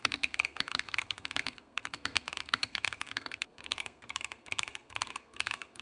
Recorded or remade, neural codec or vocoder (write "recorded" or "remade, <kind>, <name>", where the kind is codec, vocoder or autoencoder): remade, codec, SNAC